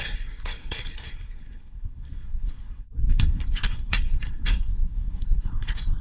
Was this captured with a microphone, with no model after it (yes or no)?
no